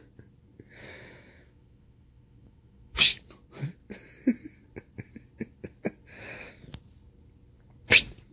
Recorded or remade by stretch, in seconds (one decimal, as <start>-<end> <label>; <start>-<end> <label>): 0.0-0.9 recorded; 0.9-3.2 remade; 3.2-8.3 recorded